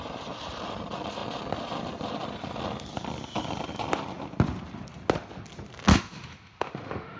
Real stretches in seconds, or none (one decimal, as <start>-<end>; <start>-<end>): 0.0-5.9